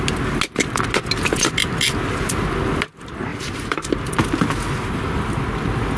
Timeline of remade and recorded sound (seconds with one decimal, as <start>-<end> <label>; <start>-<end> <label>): 0.0-3.3 recorded; 3.3-3.9 remade; 3.9-6.0 recorded